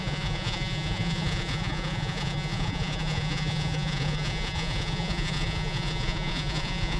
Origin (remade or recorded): remade